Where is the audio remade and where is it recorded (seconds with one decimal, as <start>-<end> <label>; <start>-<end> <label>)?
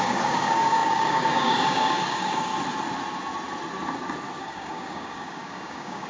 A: 0.0-2.5 remade; 2.5-4.4 recorded; 4.4-6.1 remade